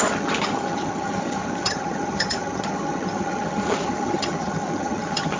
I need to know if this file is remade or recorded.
remade